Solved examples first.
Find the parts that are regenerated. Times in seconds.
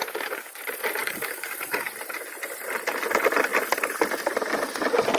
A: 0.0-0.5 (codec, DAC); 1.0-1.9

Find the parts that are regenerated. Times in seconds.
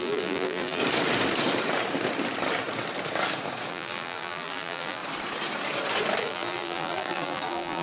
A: 0.0-0.8 (vocoder, BigVGAN v2); 3.7-5.0; 6.2-7.8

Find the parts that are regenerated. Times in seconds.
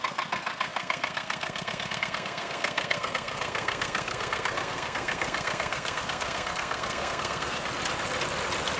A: 0.0-7.6 (codec, SNAC)